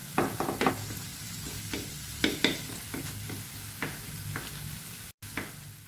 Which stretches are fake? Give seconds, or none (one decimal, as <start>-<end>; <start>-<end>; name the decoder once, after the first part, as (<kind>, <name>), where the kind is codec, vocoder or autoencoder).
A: none